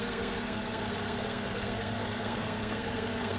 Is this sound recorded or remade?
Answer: remade